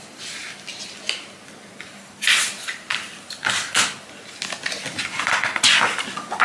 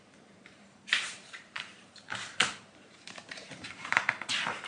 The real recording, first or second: first